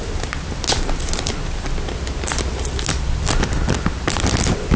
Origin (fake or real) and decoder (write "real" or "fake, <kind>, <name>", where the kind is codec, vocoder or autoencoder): real